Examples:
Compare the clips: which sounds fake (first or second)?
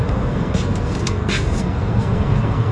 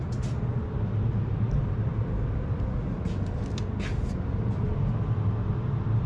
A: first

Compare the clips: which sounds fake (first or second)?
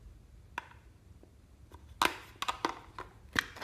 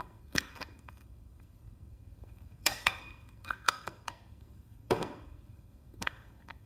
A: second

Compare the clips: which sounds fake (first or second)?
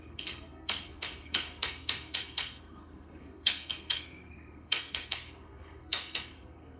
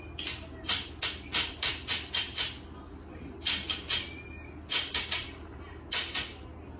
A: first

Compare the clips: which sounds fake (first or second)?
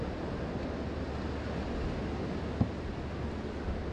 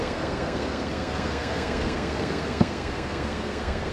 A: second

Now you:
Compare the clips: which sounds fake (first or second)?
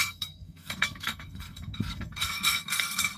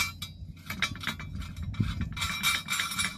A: first